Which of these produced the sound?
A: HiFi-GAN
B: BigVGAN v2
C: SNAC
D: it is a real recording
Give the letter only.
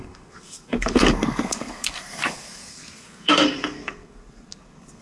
C